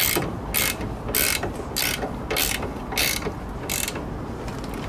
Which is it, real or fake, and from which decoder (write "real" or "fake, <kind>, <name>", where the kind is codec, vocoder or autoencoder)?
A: real